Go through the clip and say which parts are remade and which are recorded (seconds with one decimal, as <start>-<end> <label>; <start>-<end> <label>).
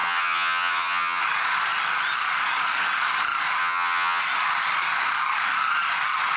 0.0-1.2 remade; 1.2-3.6 recorded; 3.6-4.2 remade; 4.2-6.4 recorded